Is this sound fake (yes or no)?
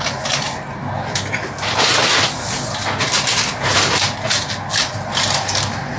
no